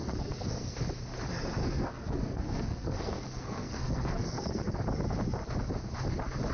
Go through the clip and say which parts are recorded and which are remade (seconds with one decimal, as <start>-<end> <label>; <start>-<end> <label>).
0.0-0.8 remade; 0.8-1.6 recorded; 1.6-4.8 remade; 4.8-6.5 recorded